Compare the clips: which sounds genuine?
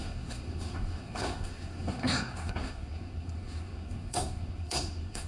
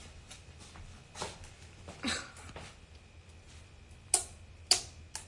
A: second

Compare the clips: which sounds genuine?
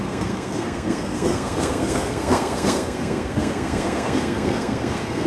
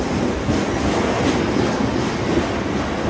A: second